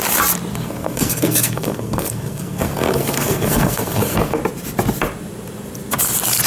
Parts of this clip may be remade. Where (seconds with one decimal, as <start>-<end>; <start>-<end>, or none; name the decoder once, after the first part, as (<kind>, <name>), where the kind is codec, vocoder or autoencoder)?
0.5-4.4 (codec, SNAC)

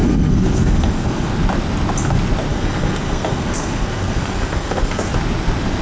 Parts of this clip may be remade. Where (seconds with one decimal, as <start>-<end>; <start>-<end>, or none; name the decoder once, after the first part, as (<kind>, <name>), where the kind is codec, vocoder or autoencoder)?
0.0-1.3 (codec, SNAC); 2.5-5.1

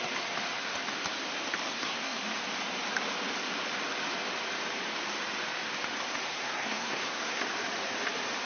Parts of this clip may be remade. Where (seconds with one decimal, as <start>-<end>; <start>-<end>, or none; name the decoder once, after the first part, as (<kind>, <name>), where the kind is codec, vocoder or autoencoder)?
1.7-2.2 (codec, SNAC); 6.3-7.4

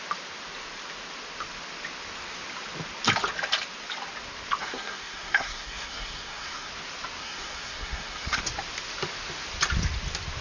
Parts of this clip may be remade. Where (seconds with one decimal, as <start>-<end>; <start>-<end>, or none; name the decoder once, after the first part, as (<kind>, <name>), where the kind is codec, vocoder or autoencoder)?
4.6-6.7 (codec, SNAC); 7.2-8.4